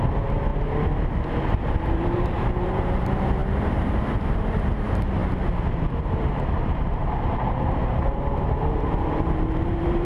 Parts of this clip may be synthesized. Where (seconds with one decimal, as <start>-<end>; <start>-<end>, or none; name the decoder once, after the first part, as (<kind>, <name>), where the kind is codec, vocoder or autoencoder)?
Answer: 0.0-0.5 (vocoder, BigVGAN v2); 1.4-5.2; 6.0-10.0